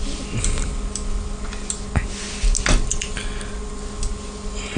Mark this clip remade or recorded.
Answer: recorded